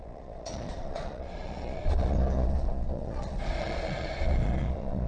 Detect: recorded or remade remade